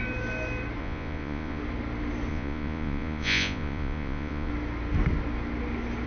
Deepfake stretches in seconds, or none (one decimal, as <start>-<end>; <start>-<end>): 0.8-1.6; 2.3-4.5